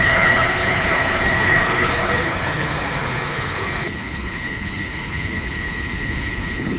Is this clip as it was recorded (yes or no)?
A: no